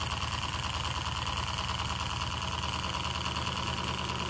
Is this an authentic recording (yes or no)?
yes